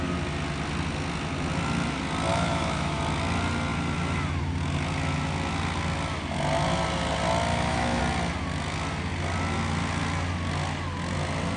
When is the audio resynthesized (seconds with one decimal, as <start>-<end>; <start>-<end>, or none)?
2.3-3.0; 7.5-8.0